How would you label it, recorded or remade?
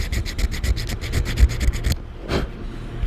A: recorded